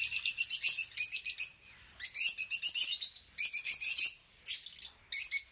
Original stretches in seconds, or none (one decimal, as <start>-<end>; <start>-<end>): 0.0-5.5